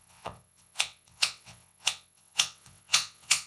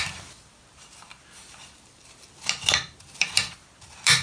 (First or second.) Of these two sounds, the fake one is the first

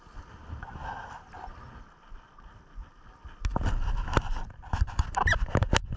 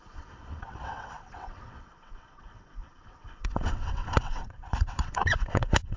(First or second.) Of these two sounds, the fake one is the second